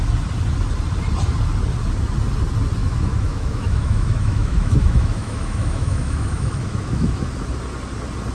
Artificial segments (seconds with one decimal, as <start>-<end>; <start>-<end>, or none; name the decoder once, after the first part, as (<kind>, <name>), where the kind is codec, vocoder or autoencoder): 2.8-7.3 (autoencoder, DAC-VAE)